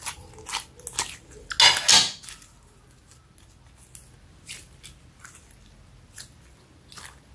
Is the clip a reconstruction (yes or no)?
no